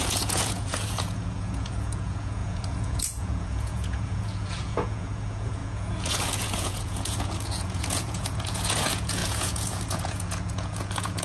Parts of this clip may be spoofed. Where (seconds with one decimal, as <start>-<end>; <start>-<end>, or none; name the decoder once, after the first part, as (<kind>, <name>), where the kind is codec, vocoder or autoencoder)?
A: 0.0-11.2 (vocoder, Vocos)